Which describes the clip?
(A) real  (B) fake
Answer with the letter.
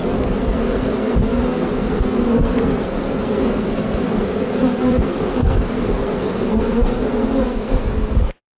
B